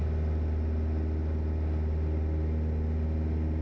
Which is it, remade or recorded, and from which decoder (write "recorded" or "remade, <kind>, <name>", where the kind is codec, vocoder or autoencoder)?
recorded